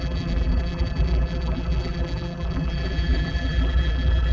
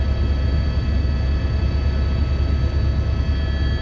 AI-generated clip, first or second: first